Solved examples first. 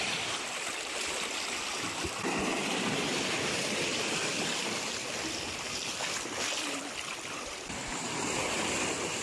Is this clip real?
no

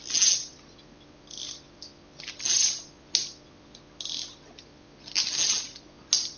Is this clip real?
yes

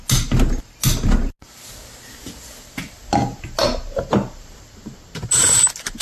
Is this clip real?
yes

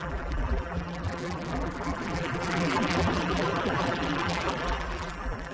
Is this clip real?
no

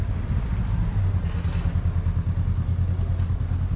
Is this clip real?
yes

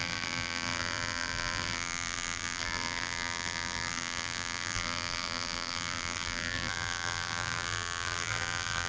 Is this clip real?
no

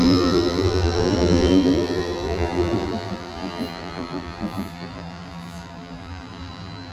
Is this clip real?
no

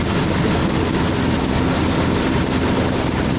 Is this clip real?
yes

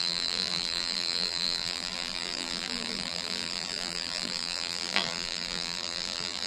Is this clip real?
no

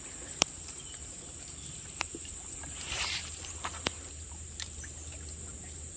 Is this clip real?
no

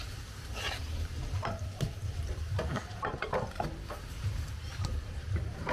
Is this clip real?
no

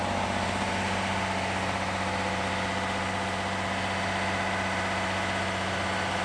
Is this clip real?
yes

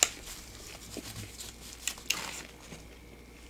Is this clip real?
yes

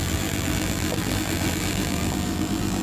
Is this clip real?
no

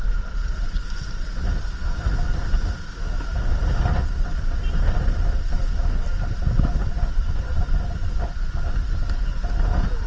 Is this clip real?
yes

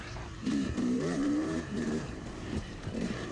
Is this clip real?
no